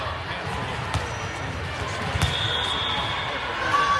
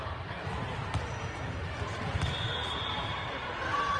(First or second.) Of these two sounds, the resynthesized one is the second